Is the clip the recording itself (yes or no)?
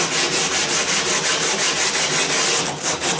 yes